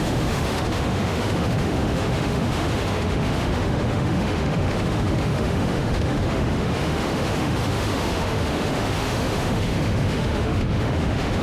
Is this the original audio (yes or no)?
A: no